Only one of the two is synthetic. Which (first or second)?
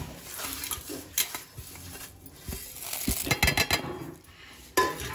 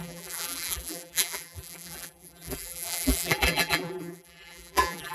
second